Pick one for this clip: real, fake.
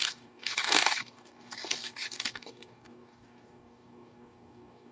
fake